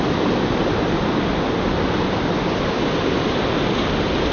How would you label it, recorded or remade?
recorded